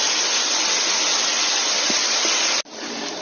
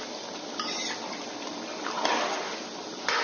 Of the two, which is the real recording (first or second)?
second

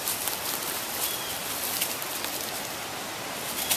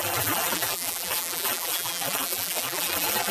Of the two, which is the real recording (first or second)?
first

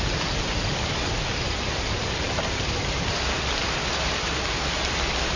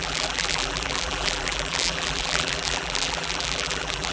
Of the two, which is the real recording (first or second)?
first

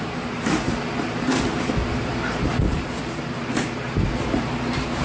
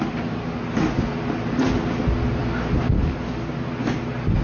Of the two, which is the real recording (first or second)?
second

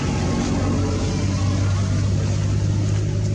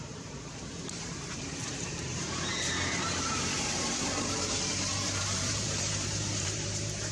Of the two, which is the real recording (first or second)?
first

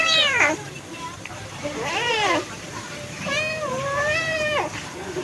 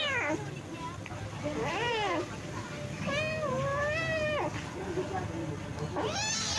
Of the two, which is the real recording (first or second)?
second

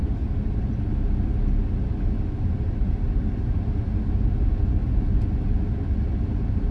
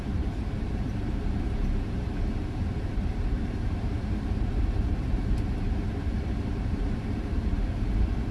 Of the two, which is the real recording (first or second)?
first